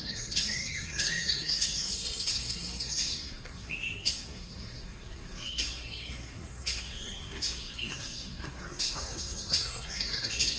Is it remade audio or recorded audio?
remade